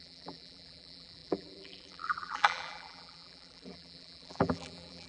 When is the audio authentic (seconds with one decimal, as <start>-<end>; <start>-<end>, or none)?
none